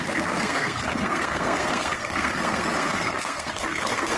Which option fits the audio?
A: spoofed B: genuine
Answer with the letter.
A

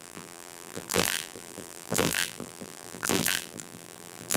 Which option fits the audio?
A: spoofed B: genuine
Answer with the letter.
A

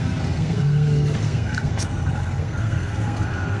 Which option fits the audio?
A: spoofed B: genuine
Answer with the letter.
A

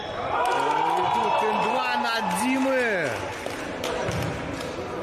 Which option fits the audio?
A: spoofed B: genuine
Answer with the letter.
B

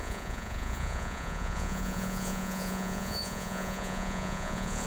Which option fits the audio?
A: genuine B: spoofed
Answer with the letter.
B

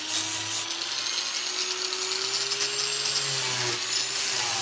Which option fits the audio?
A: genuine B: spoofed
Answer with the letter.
A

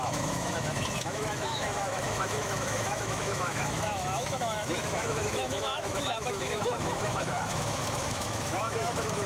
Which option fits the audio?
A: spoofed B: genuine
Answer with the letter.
A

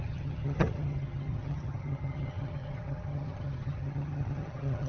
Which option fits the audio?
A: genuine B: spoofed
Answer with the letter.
B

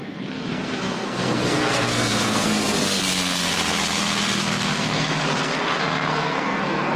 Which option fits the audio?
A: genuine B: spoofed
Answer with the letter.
B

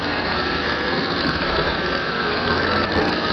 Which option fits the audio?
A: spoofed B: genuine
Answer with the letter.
A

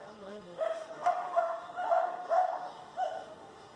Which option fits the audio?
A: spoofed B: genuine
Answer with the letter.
A